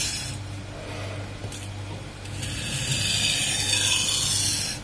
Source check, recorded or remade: recorded